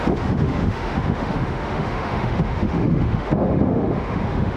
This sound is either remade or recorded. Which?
remade